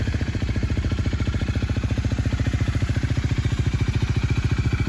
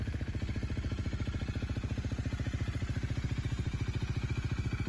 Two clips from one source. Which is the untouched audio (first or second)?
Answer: second